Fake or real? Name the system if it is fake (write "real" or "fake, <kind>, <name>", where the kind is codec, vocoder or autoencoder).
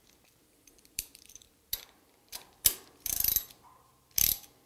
fake, vocoder, BigVGAN v2